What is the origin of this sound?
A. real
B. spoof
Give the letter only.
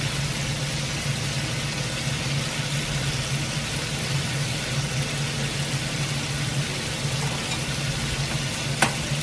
A